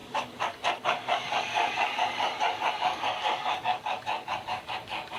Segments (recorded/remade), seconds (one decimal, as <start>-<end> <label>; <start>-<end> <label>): 0.0-5.2 remade